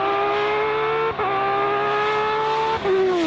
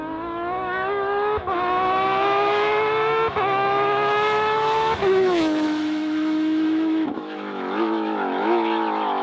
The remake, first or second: second